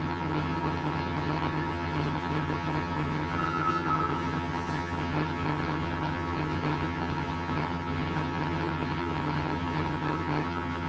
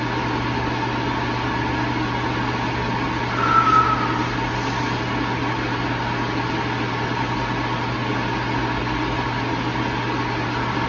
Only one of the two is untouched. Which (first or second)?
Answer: second